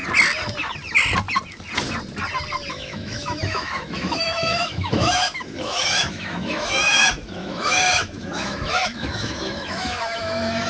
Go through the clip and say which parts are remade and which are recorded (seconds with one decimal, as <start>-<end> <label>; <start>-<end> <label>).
0.0-2.7 recorded; 2.7-10.7 remade